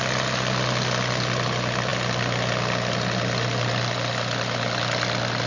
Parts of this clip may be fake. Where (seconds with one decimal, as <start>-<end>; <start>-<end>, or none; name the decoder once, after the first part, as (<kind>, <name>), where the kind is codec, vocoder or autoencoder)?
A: none

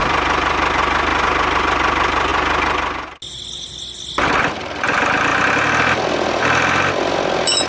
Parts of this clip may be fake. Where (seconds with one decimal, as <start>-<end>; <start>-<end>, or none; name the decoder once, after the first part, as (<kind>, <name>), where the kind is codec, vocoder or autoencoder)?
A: none

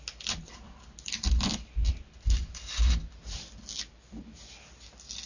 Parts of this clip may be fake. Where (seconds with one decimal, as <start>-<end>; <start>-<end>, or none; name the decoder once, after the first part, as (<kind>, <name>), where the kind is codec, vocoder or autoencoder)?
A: none

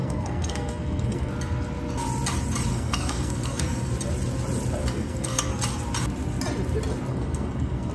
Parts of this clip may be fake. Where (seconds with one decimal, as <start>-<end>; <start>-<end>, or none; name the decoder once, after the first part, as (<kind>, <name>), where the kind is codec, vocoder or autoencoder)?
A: 0.0-1.3 (codec, SNAC); 2.7-3.9; 4.8-5.5; 7.1-7.9

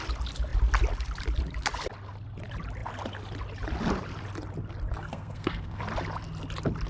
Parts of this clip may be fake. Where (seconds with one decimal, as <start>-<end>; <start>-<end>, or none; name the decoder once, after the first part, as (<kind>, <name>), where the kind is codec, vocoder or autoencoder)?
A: 5.1-5.8 (codec, SNAC)

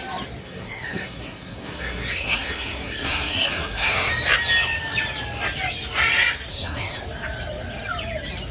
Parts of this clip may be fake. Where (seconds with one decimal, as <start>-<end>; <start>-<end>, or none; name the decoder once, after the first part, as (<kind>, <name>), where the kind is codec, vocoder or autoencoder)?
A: 0.4-4.1 (codec, SNAC); 6.5-7.0